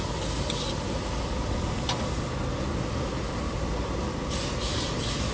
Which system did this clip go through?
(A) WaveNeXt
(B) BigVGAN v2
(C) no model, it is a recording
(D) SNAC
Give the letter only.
C